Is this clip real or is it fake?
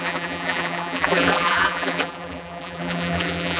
fake